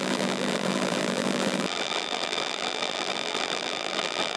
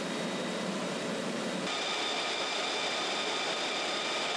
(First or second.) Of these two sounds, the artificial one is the first